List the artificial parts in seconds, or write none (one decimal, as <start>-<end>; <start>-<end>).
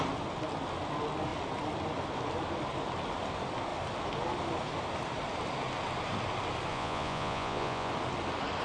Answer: 6.7-7.9